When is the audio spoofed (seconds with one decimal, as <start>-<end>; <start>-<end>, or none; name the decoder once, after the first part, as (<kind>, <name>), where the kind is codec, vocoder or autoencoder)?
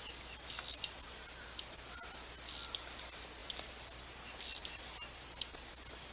none